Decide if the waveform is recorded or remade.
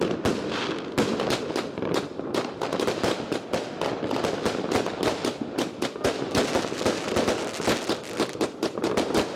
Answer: recorded